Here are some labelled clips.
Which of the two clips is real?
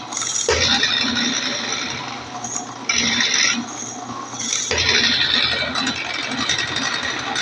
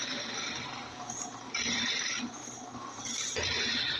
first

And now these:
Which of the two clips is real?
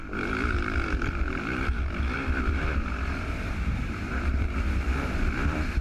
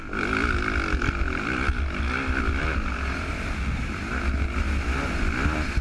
second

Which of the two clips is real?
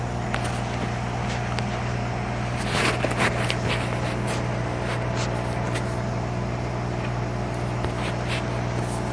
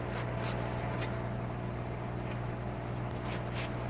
second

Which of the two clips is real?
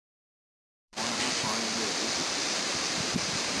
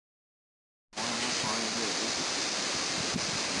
second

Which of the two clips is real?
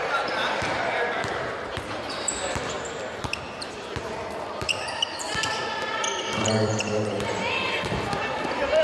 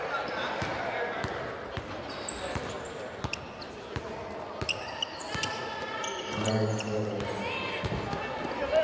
second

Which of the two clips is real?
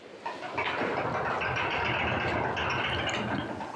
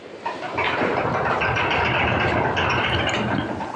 first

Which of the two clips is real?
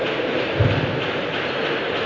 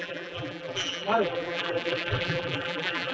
first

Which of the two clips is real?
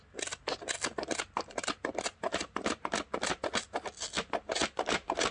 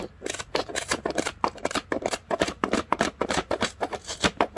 first